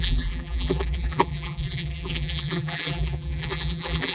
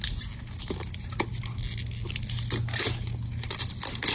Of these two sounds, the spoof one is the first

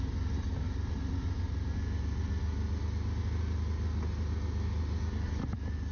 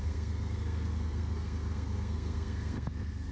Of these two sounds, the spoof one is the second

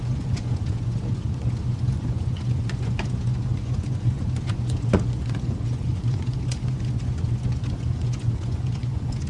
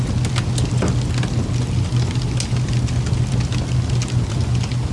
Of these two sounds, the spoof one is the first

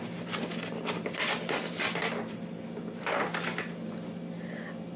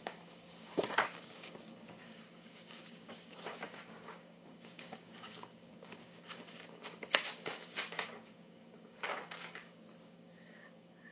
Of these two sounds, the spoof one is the second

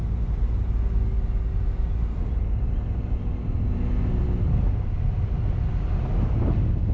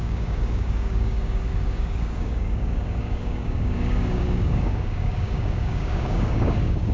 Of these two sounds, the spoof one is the second